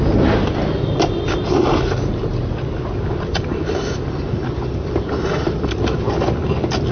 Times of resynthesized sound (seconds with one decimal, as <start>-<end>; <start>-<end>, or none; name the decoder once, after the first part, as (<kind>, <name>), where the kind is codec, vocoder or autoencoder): none